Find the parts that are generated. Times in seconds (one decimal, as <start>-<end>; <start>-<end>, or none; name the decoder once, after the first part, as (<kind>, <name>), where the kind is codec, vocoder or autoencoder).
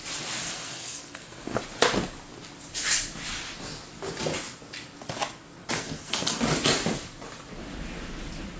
0.4-1.6 (codec, SNAC); 5.6-6.4